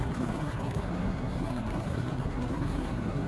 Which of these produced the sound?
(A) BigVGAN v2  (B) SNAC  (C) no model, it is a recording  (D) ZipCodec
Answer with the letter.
B